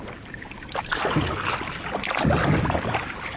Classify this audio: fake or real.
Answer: real